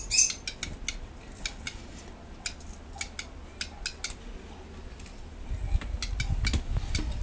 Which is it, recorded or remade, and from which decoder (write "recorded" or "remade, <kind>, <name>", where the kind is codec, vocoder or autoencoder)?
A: recorded